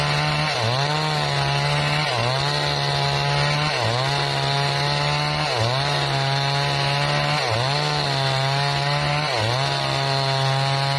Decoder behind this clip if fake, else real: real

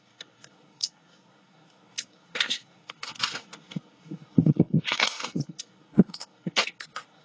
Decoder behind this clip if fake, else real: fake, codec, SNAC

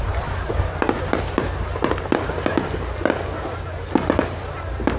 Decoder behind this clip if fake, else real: real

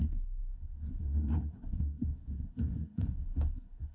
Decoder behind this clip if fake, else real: fake, codec, SNAC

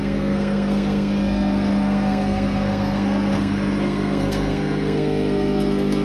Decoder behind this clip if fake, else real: fake, codec, SNAC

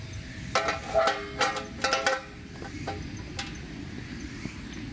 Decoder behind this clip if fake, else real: real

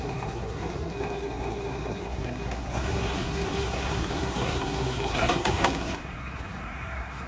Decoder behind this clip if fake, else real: fake, codec, SNAC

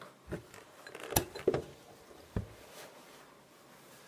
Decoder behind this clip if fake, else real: real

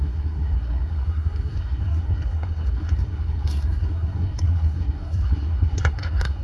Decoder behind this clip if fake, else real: fake, codec, SNAC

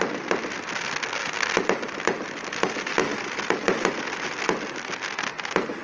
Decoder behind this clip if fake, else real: real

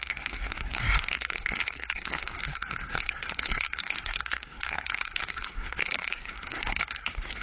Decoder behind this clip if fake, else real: fake, codec, SNAC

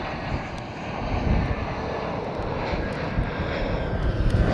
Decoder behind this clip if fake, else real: real